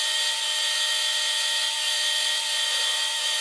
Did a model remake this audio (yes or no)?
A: yes